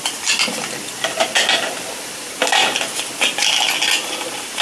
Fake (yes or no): no